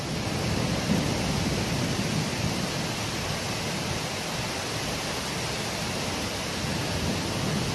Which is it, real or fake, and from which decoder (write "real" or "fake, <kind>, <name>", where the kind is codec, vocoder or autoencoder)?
real